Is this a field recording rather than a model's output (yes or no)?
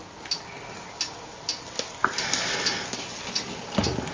yes